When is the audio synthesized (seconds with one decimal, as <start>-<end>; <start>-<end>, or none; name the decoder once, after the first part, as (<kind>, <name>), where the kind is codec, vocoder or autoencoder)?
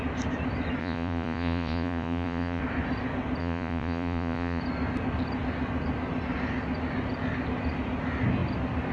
0.8-2.6 (vocoder, Vocos); 3.4-4.6